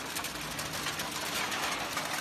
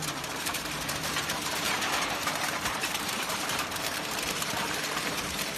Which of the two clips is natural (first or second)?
first